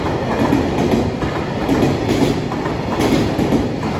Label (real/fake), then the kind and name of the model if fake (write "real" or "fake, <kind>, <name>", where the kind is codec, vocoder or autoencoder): real